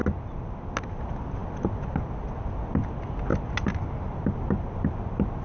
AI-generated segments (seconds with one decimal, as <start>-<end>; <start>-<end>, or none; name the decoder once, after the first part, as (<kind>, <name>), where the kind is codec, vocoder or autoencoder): none